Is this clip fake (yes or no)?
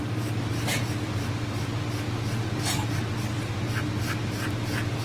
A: no